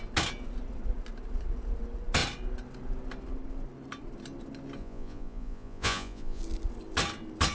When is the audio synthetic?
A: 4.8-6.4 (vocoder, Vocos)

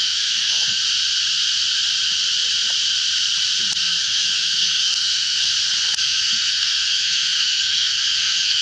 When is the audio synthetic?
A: 0.0-0.8 (codec, SNAC); 3.8-5.5; 6.0-8.6

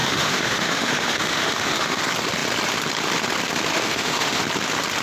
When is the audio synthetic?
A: 0.0-2.0 (autoencoder, DAC-VAE); 3.7-4.4

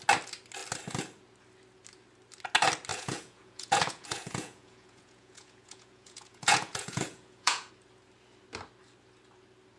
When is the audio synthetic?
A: 2.9-7.7 (vocoder, Vocos)